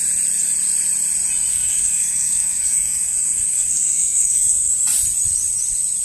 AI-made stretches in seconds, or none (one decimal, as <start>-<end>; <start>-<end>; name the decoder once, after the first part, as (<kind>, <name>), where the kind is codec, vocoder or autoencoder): 1.5-4.7 (codec, SNAC)